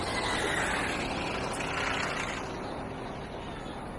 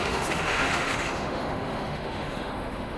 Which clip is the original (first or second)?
first